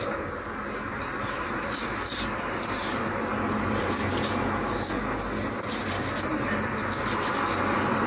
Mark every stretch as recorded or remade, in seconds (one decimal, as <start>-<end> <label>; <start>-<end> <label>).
0.0-8.1 recorded